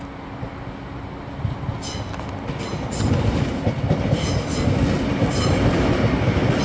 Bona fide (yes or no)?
yes